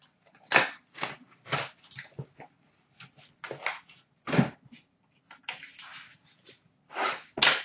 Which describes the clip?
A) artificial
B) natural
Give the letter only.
B